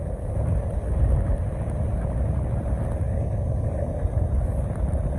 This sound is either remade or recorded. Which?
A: recorded